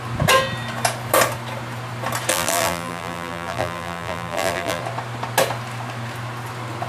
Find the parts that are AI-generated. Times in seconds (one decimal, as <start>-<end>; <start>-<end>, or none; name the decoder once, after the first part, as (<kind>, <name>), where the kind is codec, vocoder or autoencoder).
2.3-4.8 (vocoder, BigVGAN v2)